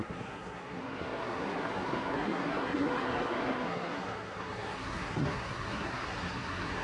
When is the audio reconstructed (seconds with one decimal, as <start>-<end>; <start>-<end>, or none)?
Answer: 0.0-6.8